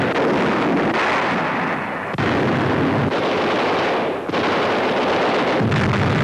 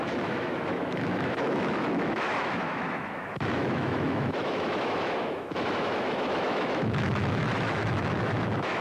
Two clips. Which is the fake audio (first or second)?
second